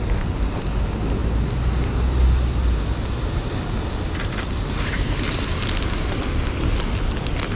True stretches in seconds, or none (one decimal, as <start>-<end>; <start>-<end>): 0.0-7.6